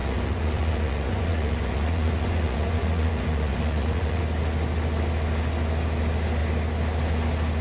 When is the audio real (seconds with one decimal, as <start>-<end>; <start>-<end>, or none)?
4.2-7.6

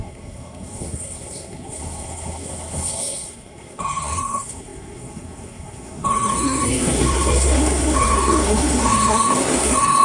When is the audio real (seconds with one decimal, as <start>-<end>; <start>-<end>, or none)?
none

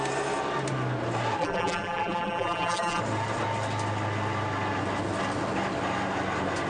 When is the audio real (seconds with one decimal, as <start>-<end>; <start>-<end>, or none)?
0.0-1.4; 3.0-6.7

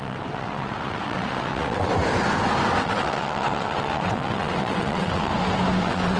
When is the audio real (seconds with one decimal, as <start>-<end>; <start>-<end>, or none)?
1.9-2.8; 5.3-5.8